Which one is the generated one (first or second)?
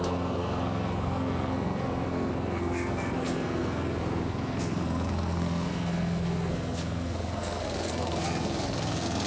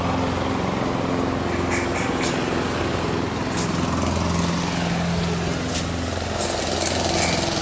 first